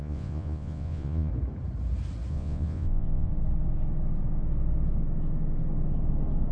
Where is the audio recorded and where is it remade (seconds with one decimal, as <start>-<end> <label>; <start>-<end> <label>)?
0.0-1.3 remade; 1.3-2.3 recorded; 2.3-3.3 remade; 3.3-6.5 recorded